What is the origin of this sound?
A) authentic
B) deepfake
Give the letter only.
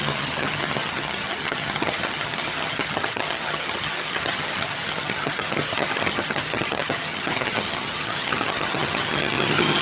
B